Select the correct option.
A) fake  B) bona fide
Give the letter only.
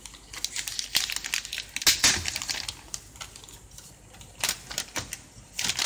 B